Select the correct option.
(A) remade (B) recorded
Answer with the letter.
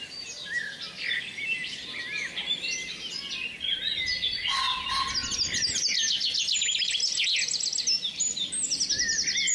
B